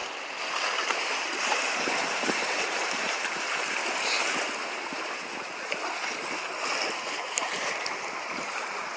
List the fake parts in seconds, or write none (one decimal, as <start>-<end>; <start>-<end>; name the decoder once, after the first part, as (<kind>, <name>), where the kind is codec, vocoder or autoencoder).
1.0-3.8 (vocoder, BigVGAN v2); 7.0-9.0